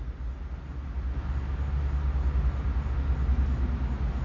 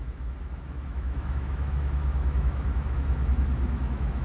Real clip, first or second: first